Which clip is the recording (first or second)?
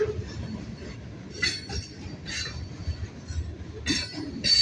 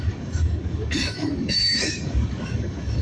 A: first